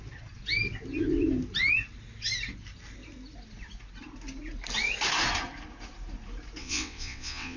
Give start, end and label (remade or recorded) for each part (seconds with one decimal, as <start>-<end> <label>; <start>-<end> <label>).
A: 0.0-6.6 recorded; 6.6-7.6 remade